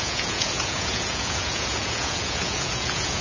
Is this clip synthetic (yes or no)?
yes